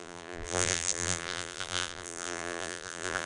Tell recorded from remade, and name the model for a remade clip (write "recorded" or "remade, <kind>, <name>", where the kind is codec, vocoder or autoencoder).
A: remade, vocoder, BigVGAN v2